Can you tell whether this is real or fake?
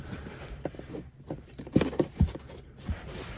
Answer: fake